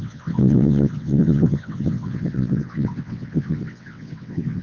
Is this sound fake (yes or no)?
yes